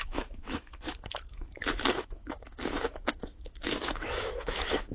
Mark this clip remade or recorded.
remade